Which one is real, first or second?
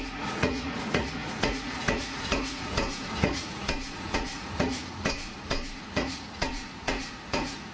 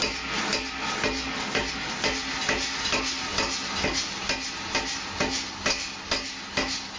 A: second